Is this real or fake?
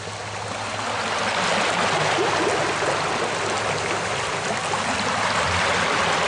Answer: real